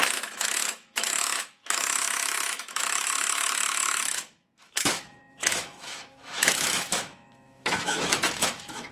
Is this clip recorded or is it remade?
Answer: remade